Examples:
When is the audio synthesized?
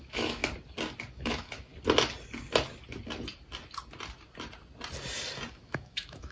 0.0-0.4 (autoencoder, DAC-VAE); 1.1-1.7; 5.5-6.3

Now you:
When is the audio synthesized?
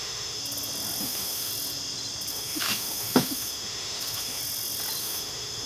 0.0-0.4 (autoencoder, DAC-VAE); 1.0-1.5; 2.3-4.4; 5.0-5.7